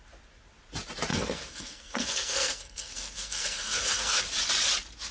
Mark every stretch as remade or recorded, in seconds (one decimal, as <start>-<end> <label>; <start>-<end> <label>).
0.0-1.1 recorded; 1.1-4.2 remade; 4.2-5.1 recorded